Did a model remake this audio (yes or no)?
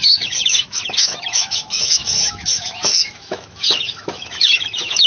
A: yes